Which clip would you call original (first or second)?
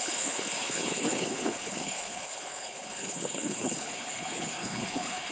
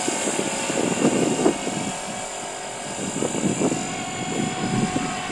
second